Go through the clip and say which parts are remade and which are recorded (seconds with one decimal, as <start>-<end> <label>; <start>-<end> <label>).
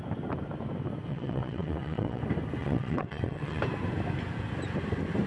0.0-1.1 recorded; 1.1-2.2 remade; 2.2-2.6 recorded; 2.6-3.6 remade; 3.6-5.3 recorded